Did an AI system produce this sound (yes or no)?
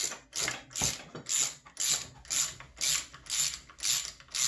no